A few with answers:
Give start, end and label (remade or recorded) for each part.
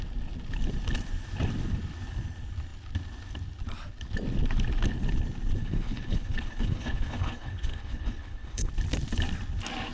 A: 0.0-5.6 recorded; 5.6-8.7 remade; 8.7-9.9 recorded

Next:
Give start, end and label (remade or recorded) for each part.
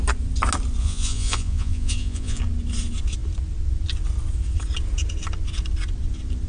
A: 0.0-0.8 recorded; 0.8-2.4 remade; 2.4-6.5 recorded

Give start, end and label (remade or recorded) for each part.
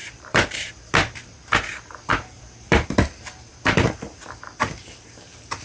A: 0.0-0.7 remade; 0.7-2.1 recorded; 2.1-4.2 remade; 4.2-5.6 recorded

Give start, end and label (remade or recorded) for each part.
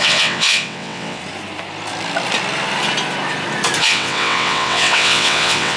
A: 0.0-1.2 remade; 1.2-3.8 recorded; 3.8-5.8 remade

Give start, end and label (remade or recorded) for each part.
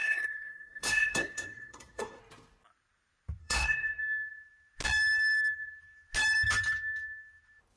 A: 0.0-2.2 remade; 2.2-3.4 recorded; 3.4-4.0 remade; 4.0-7.8 recorded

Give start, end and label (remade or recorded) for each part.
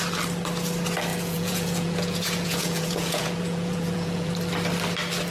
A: 0.0-1.1 recorded; 1.1-4.3 remade; 4.3-5.3 recorded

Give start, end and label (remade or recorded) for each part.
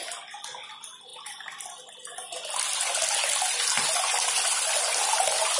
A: 0.0-5.6 recorded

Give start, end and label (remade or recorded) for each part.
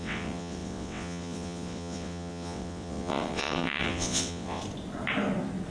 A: 0.0-4.6 remade; 4.6-5.7 recorded